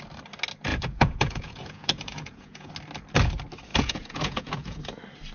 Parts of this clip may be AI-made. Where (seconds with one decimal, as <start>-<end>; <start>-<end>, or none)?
0.7-2.7; 3.7-4.8